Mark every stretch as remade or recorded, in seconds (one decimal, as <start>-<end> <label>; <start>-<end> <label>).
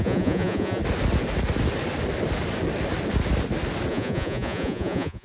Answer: 0.0-0.8 remade; 0.8-3.9 recorded; 3.9-5.2 remade